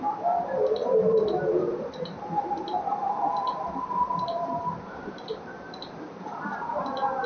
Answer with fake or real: fake